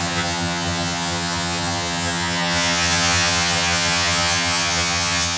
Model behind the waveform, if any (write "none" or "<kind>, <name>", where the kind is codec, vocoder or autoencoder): vocoder, HiFi-GAN